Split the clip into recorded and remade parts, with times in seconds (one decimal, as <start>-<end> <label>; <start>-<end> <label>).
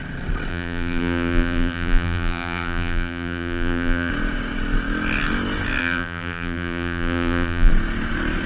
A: 0.0-0.5 recorded; 0.5-4.1 remade; 4.1-5.8 recorded; 5.8-7.7 remade; 7.7-8.5 recorded